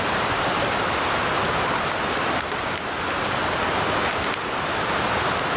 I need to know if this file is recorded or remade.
recorded